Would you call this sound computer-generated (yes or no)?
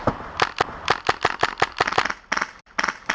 no